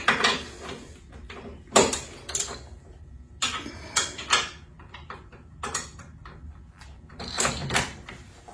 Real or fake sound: fake